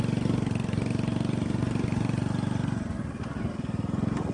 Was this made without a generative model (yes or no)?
yes